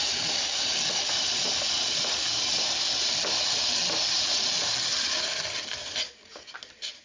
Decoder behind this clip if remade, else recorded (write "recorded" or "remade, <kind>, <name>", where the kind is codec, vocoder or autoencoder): recorded